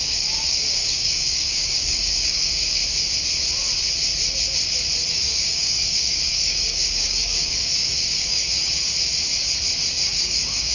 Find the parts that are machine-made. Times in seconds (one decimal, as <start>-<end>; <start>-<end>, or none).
0.0-2.8; 5.1-8.8; 9.9-10.7